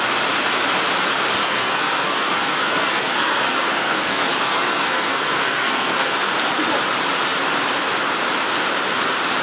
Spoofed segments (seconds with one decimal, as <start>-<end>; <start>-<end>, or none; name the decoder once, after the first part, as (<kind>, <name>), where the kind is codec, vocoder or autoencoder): 1.4-6.3 (codec, SNAC)